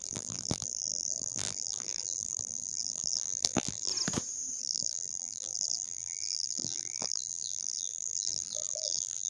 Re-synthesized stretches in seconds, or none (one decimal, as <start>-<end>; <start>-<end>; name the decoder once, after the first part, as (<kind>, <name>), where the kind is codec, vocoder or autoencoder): 0.0-3.9 (vocoder, BigVGAN v2); 4.6-9.3